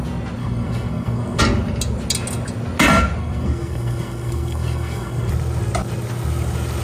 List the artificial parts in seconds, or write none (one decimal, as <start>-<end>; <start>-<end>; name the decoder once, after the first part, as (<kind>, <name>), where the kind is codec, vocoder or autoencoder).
0.4-1.4 (codec, SNAC); 3.2-5.3